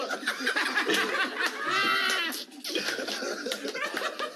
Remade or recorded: recorded